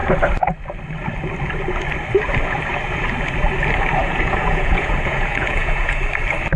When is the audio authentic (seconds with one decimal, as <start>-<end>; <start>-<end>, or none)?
0.0-4.0; 6.0-6.6